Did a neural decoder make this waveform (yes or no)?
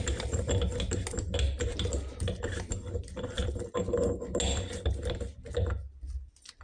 no